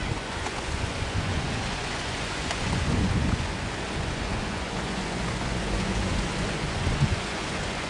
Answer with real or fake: fake